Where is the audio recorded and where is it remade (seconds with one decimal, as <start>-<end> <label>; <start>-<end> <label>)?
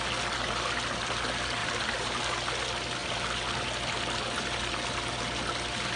0.0-1.6 recorded; 1.6-2.2 remade; 2.2-6.0 recorded